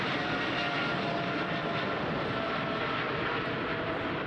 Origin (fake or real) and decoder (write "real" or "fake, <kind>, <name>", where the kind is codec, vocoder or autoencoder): real